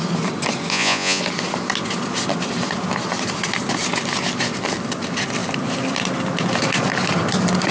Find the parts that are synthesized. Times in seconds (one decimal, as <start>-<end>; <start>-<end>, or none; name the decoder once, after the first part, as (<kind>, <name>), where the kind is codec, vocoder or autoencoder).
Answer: 0.7-1.2 (vocoder, Vocos)